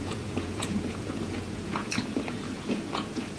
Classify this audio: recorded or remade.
remade